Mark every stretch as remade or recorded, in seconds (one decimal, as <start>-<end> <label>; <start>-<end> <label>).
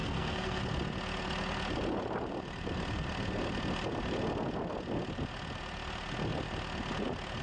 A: 0.0-0.6 remade; 0.6-7.4 recorded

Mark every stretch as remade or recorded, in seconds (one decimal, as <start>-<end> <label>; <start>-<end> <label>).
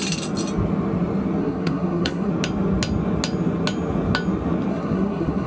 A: 0.0-1.4 recorded; 1.4-2.3 remade; 2.3-4.7 recorded; 4.7-5.5 remade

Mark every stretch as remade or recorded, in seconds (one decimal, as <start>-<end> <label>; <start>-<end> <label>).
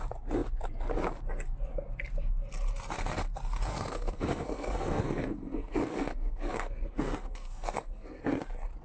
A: 0.0-3.7 recorded; 3.7-8.2 remade; 8.2-8.8 recorded